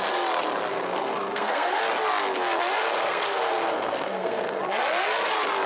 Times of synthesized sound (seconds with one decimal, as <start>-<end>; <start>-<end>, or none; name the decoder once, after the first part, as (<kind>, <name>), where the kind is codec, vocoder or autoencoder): 0.7-1.8 (codec, SNAC); 2.8-4.6